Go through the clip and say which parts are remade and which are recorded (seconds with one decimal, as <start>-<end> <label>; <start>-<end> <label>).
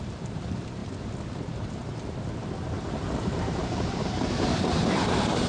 0.0-0.8 remade; 0.8-1.4 recorded; 1.4-1.8 remade; 1.8-2.8 recorded; 2.8-5.5 remade